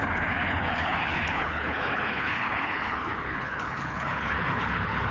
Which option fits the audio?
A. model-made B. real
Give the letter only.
A